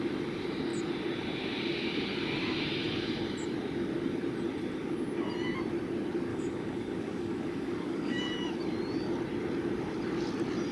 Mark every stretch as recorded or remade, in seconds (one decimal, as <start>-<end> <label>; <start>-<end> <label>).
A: 0.0-6.3 recorded; 6.3-8.2 remade; 8.2-10.7 recorded